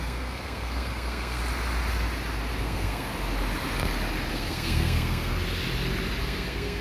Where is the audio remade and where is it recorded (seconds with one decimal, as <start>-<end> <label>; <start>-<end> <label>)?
0.0-1.4 remade; 1.4-2.6 recorded; 2.6-3.1 remade; 3.1-4.3 recorded; 4.3-5.3 remade; 5.3-6.2 recorded; 6.2-6.8 remade